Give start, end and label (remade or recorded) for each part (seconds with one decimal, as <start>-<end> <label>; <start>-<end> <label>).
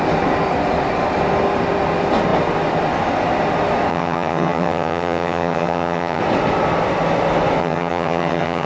0.0-3.9 recorded; 3.9-6.2 remade; 6.2-7.6 recorded; 7.6-8.7 remade